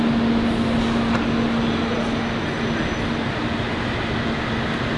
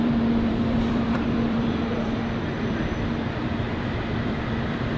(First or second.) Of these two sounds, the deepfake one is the second